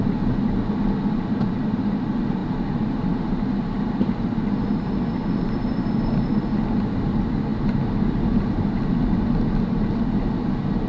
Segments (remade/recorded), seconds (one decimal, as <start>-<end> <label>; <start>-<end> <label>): 0.0-2.4 recorded; 2.4-4.6 remade; 4.6-10.9 recorded